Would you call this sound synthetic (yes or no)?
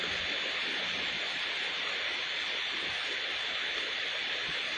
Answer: no